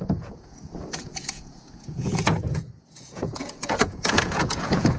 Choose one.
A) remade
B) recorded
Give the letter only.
A